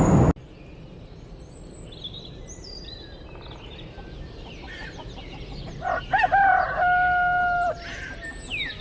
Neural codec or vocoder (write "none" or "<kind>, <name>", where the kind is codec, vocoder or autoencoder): none